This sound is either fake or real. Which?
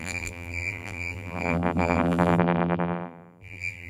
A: fake